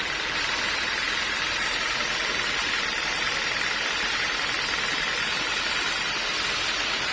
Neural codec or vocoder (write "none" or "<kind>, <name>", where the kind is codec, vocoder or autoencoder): vocoder, BigVGAN v2